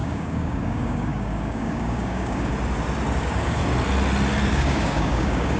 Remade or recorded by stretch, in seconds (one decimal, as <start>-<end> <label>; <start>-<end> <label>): 0.0-2.5 remade; 2.5-3.2 recorded; 3.2-3.6 remade; 3.6-4.5 recorded; 4.5-5.6 remade